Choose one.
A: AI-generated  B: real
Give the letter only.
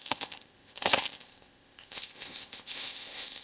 A